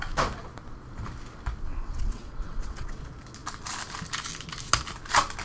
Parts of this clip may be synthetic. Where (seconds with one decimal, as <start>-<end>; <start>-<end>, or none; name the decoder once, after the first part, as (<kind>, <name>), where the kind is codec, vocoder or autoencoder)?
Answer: 1.7-3.0 (vocoder, WaveNeXt)